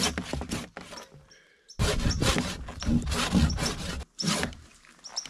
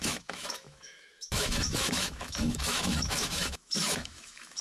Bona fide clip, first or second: first